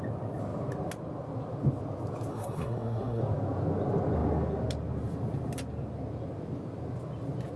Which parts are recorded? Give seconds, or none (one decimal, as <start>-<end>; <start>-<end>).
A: 0.0-2.3; 3.2-7.6